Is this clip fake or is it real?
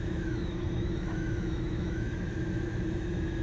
fake